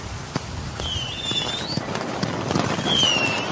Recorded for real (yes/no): yes